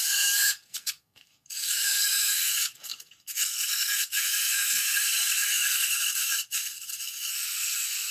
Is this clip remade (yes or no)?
yes